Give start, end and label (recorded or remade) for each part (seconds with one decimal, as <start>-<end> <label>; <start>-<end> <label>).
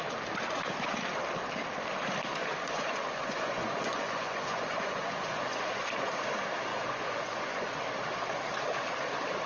0.0-2.4 recorded; 2.4-6.1 remade; 6.1-6.7 recorded; 6.7-7.8 remade; 7.8-9.5 recorded